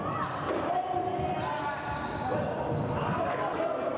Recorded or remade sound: recorded